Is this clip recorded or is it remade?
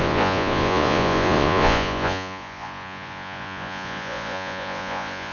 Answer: remade